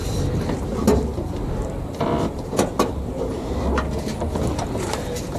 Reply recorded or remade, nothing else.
recorded